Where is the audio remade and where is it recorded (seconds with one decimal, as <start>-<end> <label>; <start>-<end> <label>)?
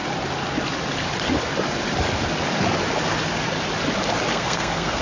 0.0-4.3 recorded; 4.3-5.0 remade